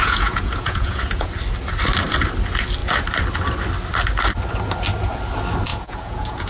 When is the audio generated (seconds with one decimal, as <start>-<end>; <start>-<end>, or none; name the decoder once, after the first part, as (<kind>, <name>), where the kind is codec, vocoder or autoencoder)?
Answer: 0.0-1.3 (vocoder, Vocos); 5.7-6.5